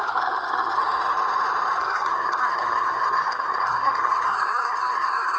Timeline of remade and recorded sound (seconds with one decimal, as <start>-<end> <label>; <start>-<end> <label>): 0.0-0.8 remade; 0.8-1.8 recorded; 1.8-5.4 remade